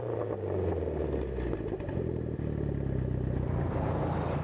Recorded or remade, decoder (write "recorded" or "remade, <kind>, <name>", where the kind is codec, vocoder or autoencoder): recorded